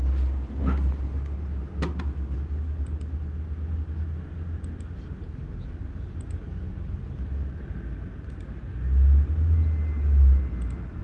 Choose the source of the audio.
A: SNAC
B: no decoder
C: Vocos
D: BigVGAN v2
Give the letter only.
B